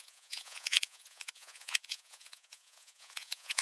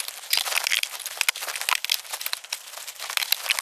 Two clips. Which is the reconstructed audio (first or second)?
first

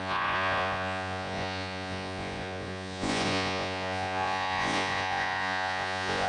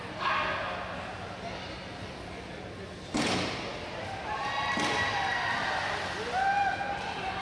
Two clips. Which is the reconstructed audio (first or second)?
first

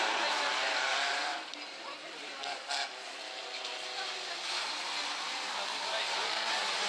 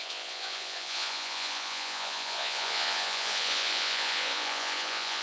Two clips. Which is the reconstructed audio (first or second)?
second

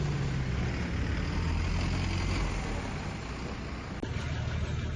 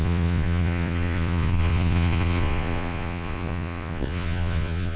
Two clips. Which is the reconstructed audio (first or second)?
second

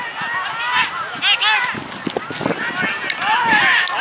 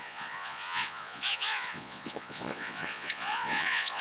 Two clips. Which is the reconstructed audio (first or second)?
second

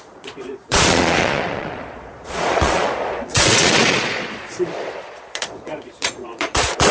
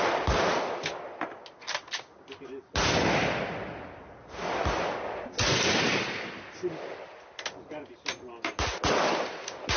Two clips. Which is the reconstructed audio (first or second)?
first